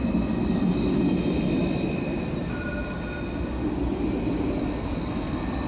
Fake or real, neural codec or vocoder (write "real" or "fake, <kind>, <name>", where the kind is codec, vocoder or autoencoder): real